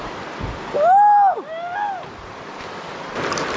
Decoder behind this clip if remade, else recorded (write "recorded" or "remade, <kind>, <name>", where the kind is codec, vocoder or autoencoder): recorded